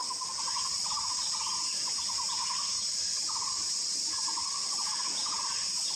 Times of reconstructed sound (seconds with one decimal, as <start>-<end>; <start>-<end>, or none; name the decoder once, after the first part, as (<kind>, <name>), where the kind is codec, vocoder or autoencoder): 4.8-5.4 (vocoder, Vocos)